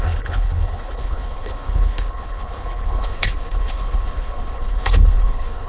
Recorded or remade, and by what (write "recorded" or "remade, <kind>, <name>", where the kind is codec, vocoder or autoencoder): remade, codec, HILCodec